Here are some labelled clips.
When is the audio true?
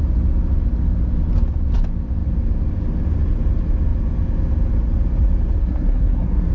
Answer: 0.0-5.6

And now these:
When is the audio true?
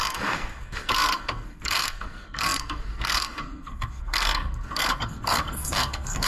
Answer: none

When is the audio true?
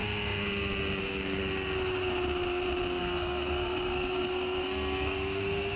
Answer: 0.0-1.0; 1.4-3.0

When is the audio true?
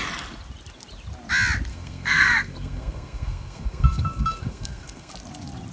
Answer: 0.0-1.7; 5.1-5.7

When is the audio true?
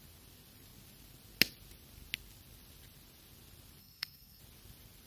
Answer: 0.0-3.8; 4.4-5.1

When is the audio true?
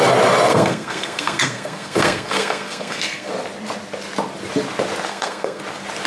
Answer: 0.0-0.5; 3.3-5.1; 5.6-6.1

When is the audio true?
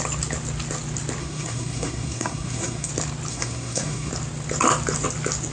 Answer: 0.0-1.2; 2.9-3.3; 4.1-5.5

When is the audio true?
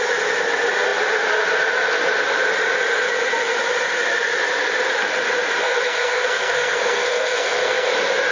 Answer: 0.0-5.6; 7.9-8.3